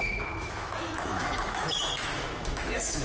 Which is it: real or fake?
fake